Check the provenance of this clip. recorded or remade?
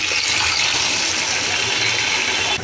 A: recorded